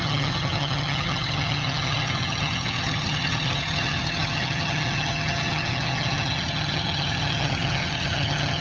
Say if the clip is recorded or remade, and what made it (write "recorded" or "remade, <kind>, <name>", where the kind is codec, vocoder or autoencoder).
remade, vocoder, HiFi-GAN